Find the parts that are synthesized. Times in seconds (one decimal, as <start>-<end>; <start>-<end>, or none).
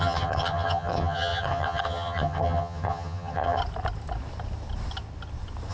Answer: 0.0-3.6